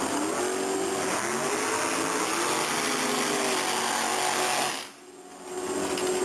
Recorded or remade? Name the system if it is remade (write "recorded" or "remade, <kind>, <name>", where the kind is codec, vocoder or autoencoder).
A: recorded